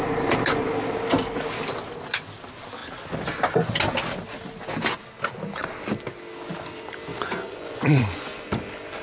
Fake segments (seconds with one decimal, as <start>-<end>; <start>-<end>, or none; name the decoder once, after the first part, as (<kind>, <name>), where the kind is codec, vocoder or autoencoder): 7.1-8.5 (vocoder, Vocos)